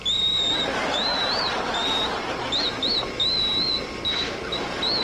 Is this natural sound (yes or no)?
yes